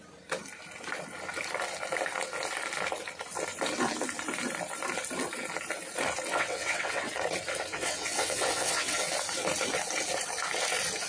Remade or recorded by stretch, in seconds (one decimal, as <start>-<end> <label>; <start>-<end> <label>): 0.0-6.3 recorded; 6.3-7.1 remade; 7.1-7.7 recorded; 7.7-9.1 remade; 9.1-11.1 recorded